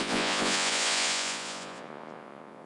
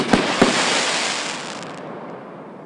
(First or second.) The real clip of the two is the second